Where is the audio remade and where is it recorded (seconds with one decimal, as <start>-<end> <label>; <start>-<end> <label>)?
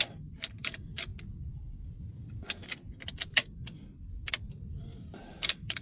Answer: 0.0-1.1 remade; 1.1-4.3 recorded; 4.3-5.8 remade